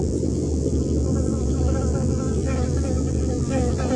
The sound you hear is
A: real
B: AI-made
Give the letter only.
B